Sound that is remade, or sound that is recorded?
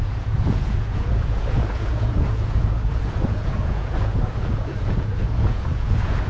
remade